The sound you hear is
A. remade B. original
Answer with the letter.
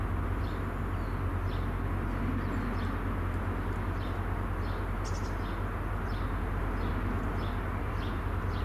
B